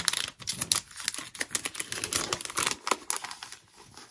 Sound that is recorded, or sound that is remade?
recorded